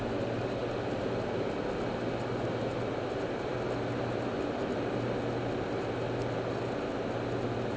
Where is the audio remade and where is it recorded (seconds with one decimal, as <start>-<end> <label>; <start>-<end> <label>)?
0.0-7.8 recorded

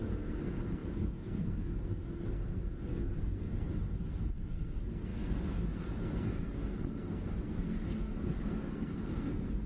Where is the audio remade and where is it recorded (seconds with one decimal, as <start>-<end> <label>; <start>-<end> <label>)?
0.0-9.7 remade

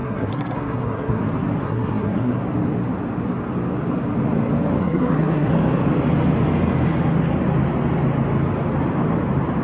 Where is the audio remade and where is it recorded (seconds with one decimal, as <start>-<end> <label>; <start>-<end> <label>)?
0.0-1.2 remade; 1.2-1.6 recorded; 1.6-2.4 remade; 2.4-4.8 recorded; 4.8-5.5 remade; 5.5-9.6 recorded